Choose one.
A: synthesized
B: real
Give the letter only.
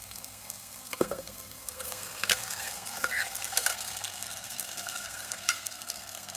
A